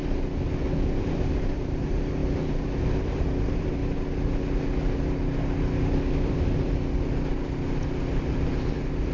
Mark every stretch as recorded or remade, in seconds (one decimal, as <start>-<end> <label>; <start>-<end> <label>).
0.0-1.0 recorded; 1.0-2.2 remade; 2.2-3.0 recorded; 3.0-3.8 remade; 3.8-8.2 recorded; 8.2-9.1 remade